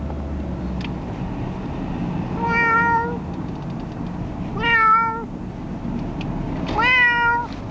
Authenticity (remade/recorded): recorded